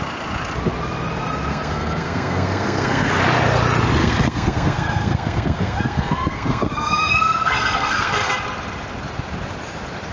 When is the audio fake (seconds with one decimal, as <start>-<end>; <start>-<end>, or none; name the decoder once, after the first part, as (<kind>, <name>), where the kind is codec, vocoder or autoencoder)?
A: 1.5-3.1 (codec, SNAC); 4.0-8.3